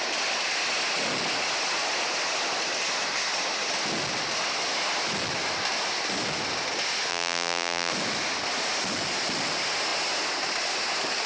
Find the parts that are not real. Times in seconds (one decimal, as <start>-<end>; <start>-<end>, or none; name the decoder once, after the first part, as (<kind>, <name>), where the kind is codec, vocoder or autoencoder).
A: 7.1-7.9 (vocoder, BigVGAN v2)

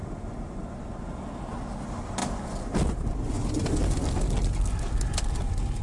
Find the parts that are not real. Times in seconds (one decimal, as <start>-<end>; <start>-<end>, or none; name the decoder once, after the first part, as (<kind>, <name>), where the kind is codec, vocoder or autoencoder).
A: none

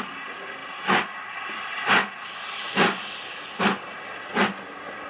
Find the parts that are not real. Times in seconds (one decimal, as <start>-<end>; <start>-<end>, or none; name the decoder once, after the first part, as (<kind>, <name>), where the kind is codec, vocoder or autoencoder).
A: none

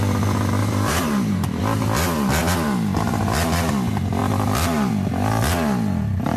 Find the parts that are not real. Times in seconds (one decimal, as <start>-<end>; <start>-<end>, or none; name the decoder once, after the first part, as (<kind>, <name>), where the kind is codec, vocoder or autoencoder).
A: 0.6-1.6 (vocoder, BigVGAN v2)

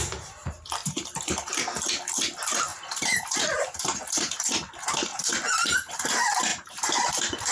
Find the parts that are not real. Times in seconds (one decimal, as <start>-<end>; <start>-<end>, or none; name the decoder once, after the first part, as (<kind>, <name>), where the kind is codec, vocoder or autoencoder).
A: 0.8-1.5 (vocoder, BigVGAN v2); 2.7-4.4; 5.1-5.9; 6.5-7.1

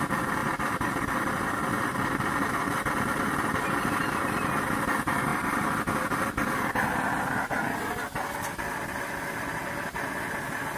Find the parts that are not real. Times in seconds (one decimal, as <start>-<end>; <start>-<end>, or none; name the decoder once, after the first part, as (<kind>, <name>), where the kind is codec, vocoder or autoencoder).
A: 0.4-1.4 (vocoder, BigVGAN v2)

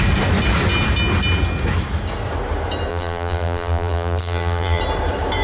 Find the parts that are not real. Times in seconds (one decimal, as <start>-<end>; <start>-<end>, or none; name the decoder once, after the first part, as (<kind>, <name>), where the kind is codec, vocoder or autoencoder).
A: 2.9-4.8 (vocoder, BigVGAN v2)